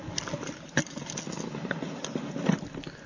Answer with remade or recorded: recorded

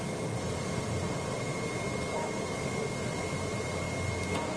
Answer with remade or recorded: recorded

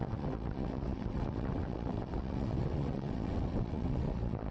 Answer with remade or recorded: remade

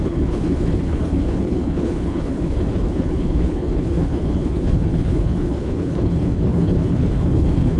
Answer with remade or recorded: remade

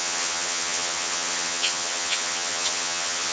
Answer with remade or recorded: remade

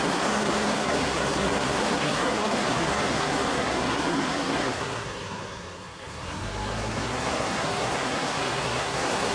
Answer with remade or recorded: remade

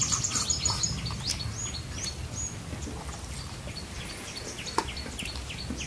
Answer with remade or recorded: recorded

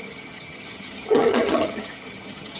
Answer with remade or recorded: remade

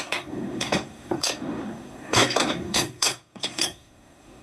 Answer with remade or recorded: remade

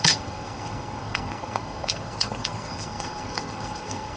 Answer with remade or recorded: remade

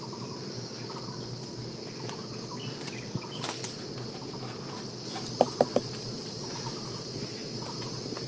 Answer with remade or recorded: recorded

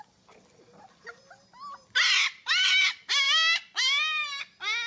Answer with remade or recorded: recorded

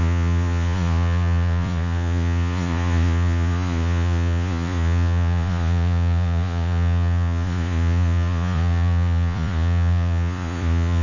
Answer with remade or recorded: remade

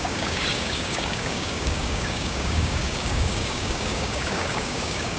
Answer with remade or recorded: remade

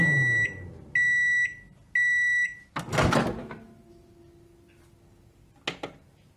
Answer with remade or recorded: recorded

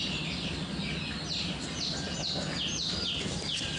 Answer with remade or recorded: recorded